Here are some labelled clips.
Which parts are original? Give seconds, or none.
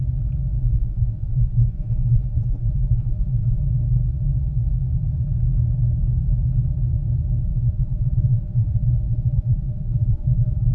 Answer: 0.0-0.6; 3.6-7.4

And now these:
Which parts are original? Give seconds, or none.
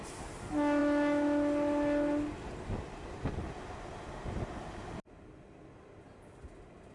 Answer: 0.0-6.9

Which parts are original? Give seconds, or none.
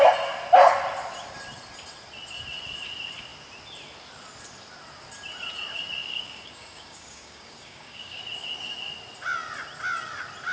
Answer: 0.0-6.0; 8.2-10.5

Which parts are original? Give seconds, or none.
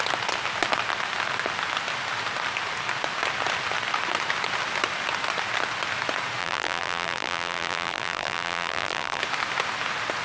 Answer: 0.0-6.4; 9.2-10.2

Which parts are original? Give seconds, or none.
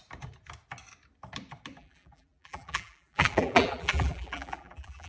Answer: 0.0-1.8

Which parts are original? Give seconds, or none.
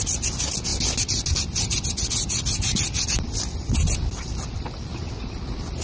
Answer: 0.0-5.8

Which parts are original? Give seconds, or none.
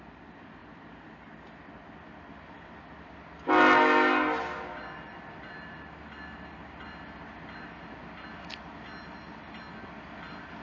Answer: 0.0-10.6